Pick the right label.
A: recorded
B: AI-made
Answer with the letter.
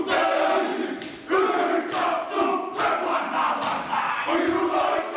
A